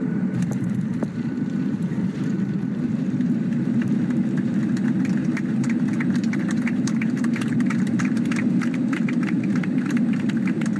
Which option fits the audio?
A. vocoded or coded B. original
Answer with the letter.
A